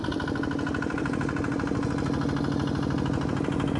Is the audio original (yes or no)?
yes